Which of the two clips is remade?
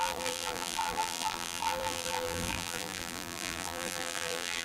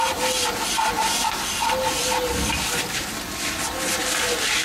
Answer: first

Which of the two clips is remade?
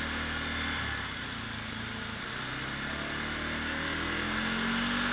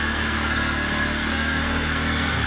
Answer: second